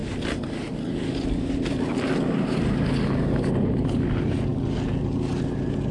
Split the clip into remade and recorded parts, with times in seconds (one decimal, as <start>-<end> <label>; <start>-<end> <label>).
0.0-5.9 recorded

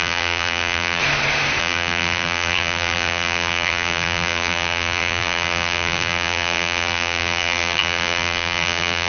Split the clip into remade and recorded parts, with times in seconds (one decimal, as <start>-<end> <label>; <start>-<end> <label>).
0.0-1.0 remade; 1.0-1.6 recorded; 1.6-9.1 remade

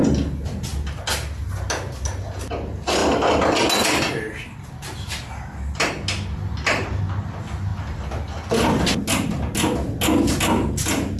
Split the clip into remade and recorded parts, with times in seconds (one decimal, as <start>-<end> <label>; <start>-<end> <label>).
0.0-11.2 recorded

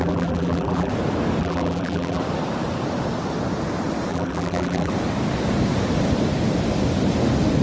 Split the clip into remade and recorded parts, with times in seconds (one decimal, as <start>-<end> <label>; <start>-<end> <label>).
0.0-0.9 remade; 0.9-1.4 recorded; 1.4-2.2 remade; 2.2-4.1 recorded; 4.1-4.9 remade; 4.9-7.6 recorded

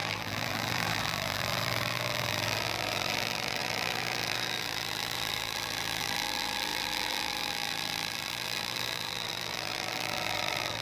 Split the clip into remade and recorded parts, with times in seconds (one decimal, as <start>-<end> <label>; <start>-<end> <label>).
0.0-10.8 remade

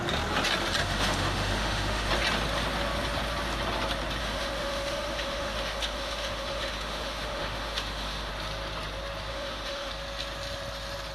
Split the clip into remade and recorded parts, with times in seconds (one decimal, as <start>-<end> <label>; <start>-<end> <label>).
0.0-0.8 recorded; 0.8-2.1 remade; 2.1-4.2 recorded; 4.2-8.3 remade; 8.3-9.3 recorded; 9.3-9.9 remade; 9.9-11.1 recorded